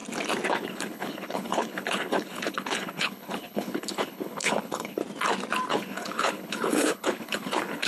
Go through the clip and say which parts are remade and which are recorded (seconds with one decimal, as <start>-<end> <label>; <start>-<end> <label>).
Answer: 0.0-0.5 recorded; 0.5-5.0 remade; 5.0-5.7 recorded; 5.7-7.9 remade